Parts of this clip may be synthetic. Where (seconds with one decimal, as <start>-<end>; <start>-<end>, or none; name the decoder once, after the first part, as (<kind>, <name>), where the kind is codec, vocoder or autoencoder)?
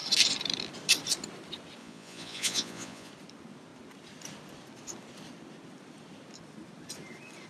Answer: 1.8-3.1 (vocoder, Vocos)